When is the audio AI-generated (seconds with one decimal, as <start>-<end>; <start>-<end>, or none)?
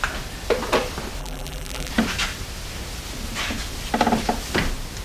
1.2-1.9